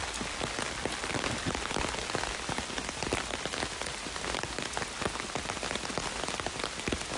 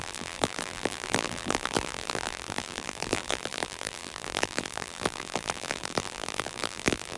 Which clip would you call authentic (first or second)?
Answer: first